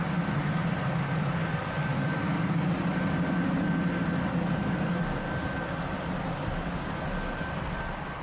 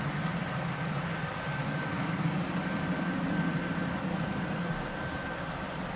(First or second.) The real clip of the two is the first